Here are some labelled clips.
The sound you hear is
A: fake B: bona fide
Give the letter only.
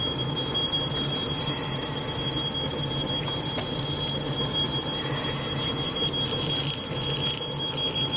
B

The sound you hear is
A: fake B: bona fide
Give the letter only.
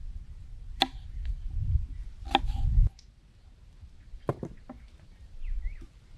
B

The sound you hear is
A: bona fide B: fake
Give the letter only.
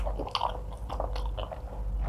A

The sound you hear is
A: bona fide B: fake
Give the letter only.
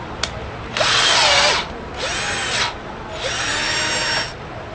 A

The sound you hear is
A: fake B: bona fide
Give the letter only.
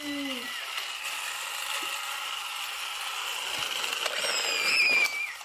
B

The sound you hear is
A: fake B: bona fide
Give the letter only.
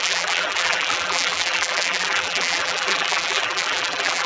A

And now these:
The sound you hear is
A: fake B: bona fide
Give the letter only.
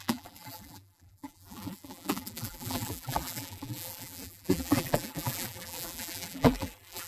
A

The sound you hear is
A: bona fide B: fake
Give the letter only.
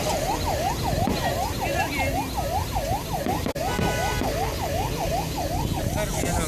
A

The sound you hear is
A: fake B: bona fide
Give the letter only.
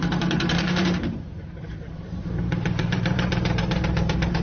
A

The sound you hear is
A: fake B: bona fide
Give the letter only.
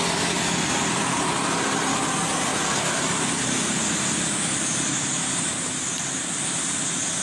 B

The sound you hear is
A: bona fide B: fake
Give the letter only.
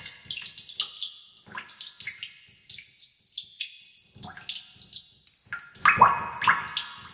A